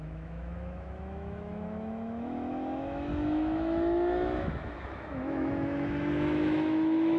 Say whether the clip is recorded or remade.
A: remade